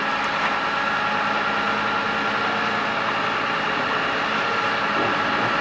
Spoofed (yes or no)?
no